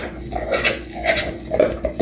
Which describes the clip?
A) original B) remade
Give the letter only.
B